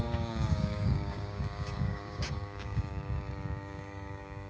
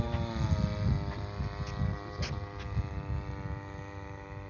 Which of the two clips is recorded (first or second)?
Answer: second